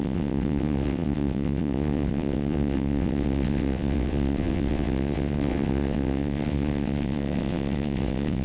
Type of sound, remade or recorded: remade